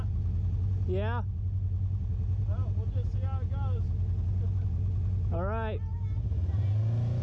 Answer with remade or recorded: recorded